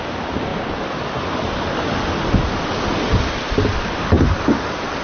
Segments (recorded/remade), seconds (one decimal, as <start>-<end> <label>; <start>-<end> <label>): 0.0-5.0 recorded